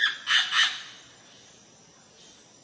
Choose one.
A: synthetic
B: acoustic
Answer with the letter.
B